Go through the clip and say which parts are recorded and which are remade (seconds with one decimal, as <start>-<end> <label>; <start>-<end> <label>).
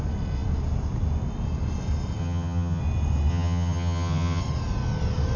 0.0-2.2 recorded; 2.2-2.8 remade; 2.8-3.3 recorded; 3.3-4.4 remade; 4.4-5.4 recorded